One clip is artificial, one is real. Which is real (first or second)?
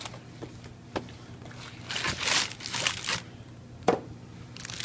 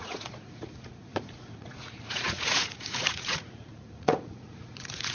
first